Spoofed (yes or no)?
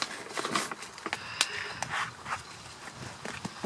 no